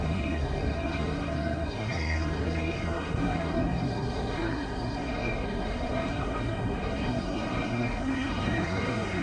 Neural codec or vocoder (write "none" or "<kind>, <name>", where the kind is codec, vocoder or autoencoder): codec, SNAC